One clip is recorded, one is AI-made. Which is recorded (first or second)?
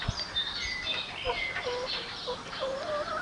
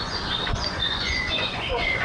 first